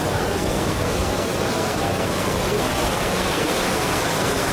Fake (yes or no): yes